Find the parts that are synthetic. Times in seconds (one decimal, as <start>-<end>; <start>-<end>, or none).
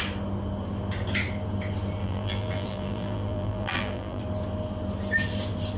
2.0-4.2